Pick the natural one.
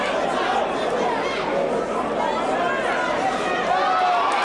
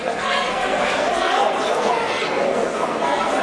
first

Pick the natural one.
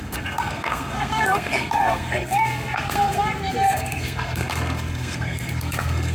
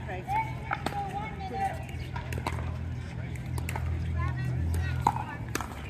second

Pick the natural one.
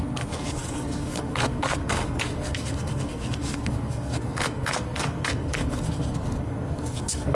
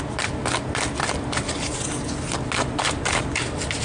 second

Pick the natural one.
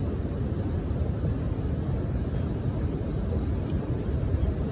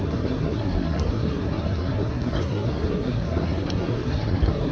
first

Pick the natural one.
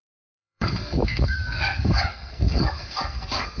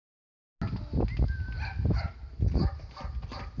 second